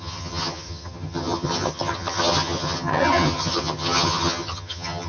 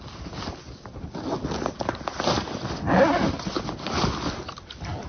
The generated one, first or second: first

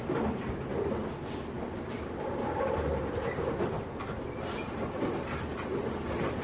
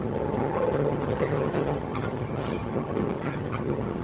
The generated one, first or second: second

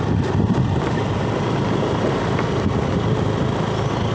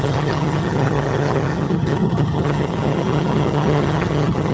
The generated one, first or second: second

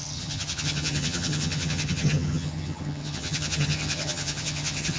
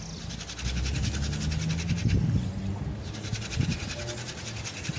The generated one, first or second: first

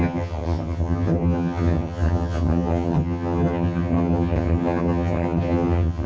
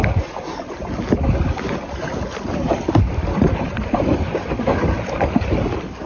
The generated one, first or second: first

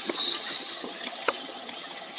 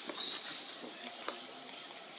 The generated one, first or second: first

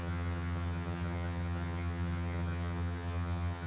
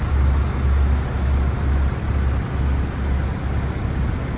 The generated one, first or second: first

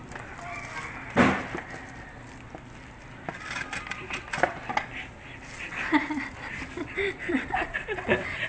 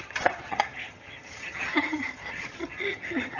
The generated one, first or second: second